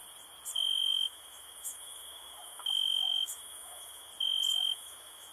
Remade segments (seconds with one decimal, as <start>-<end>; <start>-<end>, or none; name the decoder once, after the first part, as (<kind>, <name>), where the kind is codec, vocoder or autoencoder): 0.9-4.1 (autoencoder, DAC-VAE); 4.5-5.3